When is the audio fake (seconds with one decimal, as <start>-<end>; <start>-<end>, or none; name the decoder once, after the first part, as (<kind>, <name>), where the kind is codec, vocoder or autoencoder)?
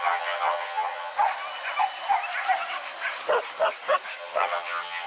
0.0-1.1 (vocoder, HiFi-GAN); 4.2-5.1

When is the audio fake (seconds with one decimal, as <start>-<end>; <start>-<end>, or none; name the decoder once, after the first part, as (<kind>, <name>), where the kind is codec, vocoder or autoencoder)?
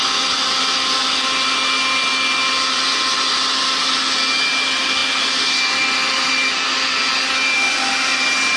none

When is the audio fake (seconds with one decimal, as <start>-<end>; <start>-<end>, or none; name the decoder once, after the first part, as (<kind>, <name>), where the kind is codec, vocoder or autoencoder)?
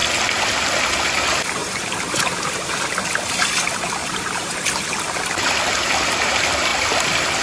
1.6-2.8 (vocoder, BigVGAN v2); 4.0-4.7